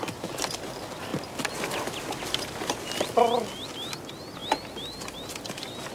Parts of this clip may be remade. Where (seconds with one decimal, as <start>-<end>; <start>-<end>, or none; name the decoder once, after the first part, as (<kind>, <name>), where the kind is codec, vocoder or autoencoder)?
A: 1.1-2.8 (vocoder, BigVGAN v2)